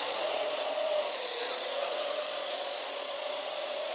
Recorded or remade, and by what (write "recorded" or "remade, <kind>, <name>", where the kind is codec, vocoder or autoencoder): remade, vocoder, Vocos